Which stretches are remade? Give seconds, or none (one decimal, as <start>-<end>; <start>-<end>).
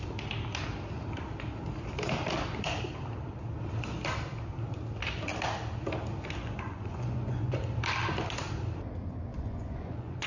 6.4-7.6; 9.3-10.3